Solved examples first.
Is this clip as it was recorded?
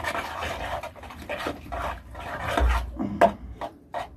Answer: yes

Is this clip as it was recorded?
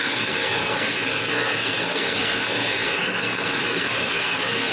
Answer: no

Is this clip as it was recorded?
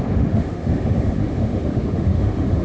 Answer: no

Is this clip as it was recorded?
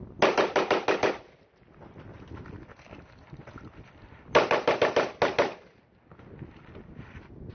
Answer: yes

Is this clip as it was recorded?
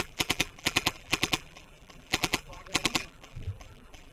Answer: no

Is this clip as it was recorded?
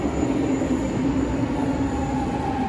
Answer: yes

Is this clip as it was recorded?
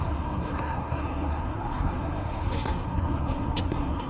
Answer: no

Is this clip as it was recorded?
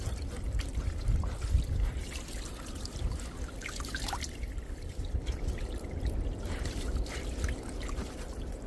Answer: no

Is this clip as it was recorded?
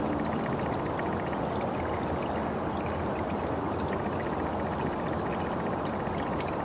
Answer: yes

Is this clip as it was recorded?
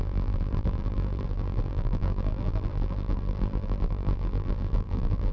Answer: no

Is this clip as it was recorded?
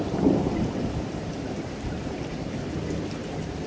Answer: no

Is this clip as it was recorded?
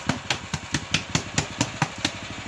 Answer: yes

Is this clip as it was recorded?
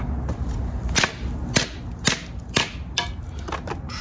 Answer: yes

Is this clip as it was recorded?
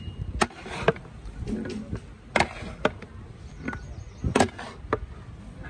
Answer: yes